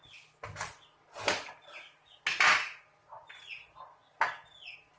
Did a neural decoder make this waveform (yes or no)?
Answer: no